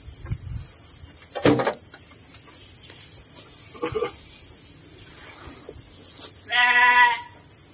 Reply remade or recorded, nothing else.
recorded